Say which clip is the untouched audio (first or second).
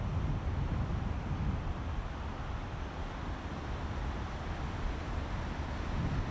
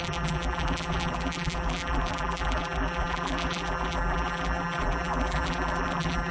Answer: first